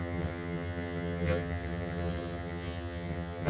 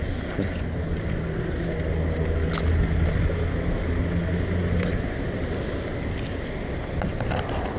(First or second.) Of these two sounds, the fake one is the first